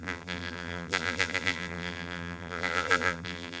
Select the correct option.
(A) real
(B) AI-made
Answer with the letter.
B